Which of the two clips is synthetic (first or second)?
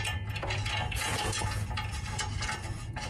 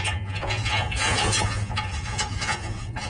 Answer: second